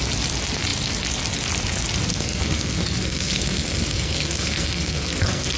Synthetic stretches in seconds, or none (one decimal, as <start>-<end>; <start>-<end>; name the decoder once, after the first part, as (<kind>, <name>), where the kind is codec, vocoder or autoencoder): 2.1-5.6 (codec, SNAC)